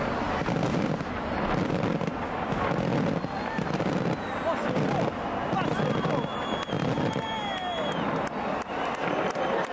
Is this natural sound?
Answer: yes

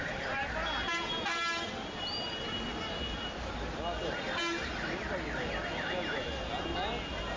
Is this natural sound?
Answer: yes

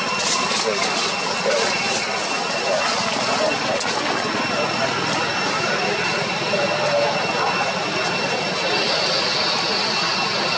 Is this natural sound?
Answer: yes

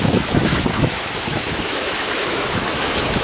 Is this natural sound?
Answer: no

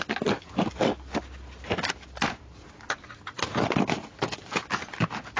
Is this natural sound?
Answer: yes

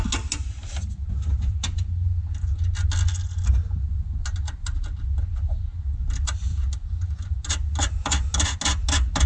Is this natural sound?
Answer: yes